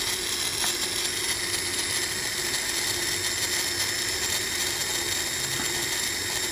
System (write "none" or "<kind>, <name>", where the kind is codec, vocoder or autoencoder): none